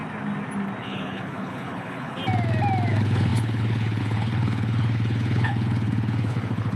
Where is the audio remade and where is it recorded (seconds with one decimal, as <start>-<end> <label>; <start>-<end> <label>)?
0.0-0.8 recorded; 0.8-2.2 remade; 2.2-2.9 recorded; 2.9-6.8 remade